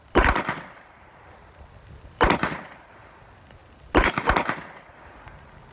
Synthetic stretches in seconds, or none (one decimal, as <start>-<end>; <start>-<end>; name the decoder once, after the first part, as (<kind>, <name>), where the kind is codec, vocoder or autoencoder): 0.0-3.6 (vocoder, BigVGAN v2); 4.7-5.7